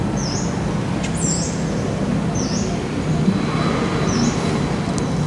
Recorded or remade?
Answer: recorded